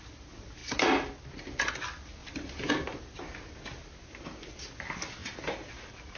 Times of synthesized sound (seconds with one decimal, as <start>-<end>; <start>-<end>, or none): 2.2-2.7; 5.2-5.7